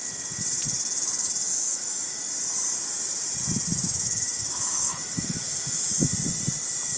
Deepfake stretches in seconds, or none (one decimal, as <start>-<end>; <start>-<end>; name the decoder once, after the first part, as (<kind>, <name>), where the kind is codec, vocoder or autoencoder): 1.6-2.2 (autoencoder, DAC-VAE); 3.7-6.0